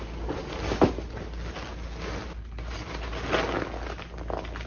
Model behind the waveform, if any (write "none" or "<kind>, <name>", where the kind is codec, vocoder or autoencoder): none